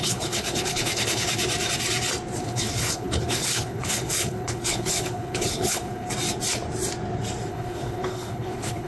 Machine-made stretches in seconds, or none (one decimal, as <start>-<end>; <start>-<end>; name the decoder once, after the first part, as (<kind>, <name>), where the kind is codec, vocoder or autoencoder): 0.0-1.3 (codec, HILCodec); 2.4-6.1; 7.5-8.9